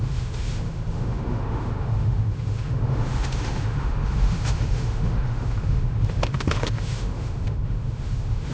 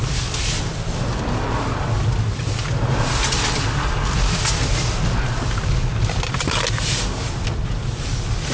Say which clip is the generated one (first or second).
first